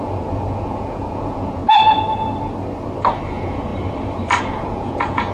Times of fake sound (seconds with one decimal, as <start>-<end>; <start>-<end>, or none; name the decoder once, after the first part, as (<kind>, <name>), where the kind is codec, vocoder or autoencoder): 0.0-1.6 (vocoder, Vocos); 3.3-3.7; 4.4-5.3